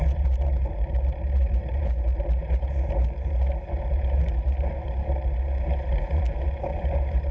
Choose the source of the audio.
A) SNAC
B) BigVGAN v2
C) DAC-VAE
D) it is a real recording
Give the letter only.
B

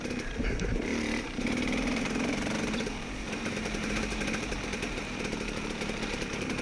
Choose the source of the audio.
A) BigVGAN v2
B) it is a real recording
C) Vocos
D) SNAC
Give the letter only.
A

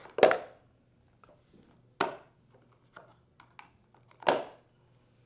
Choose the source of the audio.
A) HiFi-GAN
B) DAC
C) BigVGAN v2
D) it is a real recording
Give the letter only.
D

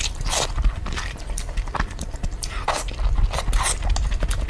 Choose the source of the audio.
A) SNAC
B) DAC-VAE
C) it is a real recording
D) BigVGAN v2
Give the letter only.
C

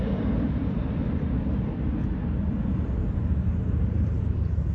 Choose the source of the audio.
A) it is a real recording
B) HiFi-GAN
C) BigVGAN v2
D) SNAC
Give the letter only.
A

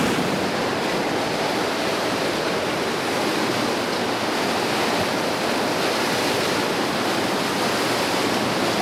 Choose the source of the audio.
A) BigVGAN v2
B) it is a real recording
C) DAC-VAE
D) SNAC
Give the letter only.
A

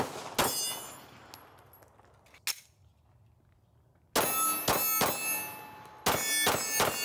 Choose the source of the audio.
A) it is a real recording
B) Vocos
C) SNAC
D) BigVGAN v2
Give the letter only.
A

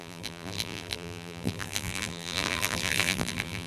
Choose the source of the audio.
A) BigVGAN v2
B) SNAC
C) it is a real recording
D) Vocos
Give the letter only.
A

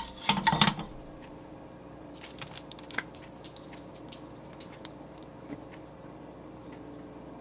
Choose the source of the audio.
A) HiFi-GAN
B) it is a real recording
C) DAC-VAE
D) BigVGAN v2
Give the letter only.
B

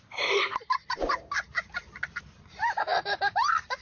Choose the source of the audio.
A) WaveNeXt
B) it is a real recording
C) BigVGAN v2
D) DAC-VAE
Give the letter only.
C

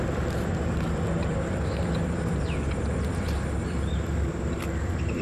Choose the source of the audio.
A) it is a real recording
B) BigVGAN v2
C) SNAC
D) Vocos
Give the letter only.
B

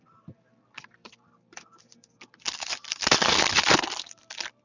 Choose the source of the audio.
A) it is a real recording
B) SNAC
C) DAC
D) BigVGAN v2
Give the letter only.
D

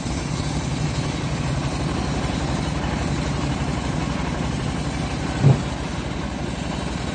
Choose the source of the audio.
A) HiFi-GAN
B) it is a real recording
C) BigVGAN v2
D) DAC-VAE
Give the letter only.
B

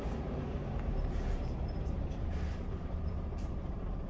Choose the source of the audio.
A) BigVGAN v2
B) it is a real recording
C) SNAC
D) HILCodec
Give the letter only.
A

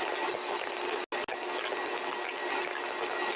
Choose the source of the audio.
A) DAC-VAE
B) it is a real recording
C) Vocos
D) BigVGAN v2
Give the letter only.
B